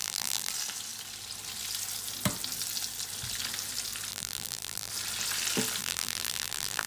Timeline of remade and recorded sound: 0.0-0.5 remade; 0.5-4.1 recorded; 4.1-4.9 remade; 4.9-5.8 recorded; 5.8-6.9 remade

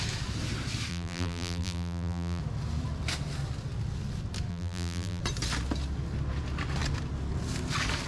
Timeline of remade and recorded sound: 0.0-0.9 recorded; 0.9-2.4 remade; 2.4-4.5 recorded; 4.5-5.2 remade; 5.2-8.1 recorded

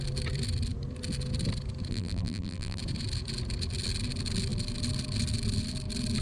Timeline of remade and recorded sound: 0.0-1.9 recorded; 1.9-2.8 remade; 2.8-6.2 recorded

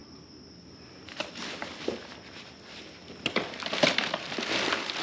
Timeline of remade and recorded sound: 0.0-3.0 recorded; 3.0-5.0 remade